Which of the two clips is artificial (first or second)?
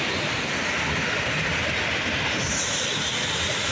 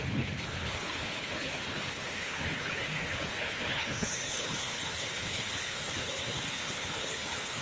second